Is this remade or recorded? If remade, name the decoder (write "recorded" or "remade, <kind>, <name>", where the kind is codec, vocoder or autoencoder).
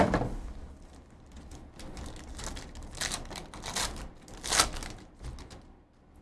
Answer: recorded